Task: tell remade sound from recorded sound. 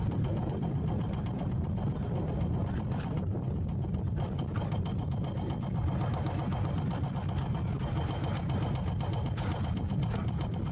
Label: recorded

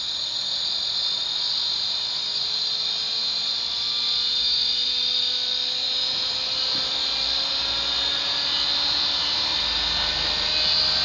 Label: recorded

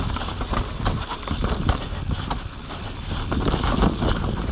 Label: recorded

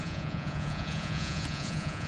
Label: remade